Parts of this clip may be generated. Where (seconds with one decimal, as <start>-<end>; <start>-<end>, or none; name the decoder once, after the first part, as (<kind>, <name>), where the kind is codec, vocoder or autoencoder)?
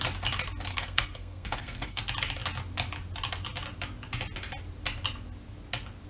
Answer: 0.7-2.0 (codec, SNAC)